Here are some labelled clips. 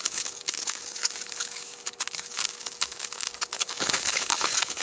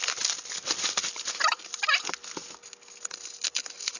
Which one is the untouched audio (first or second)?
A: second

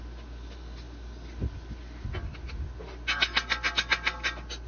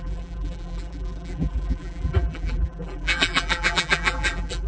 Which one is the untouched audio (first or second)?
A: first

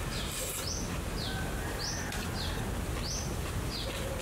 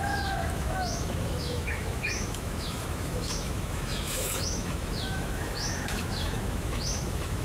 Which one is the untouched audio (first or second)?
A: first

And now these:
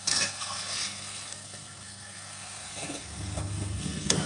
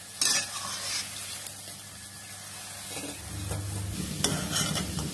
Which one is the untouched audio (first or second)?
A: second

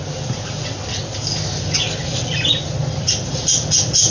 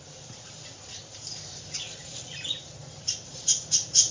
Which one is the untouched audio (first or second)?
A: first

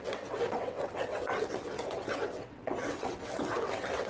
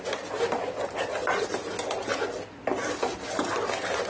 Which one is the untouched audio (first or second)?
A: second